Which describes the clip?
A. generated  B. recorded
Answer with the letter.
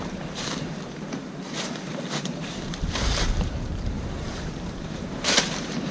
A